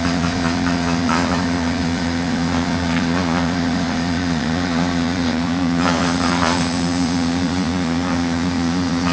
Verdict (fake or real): fake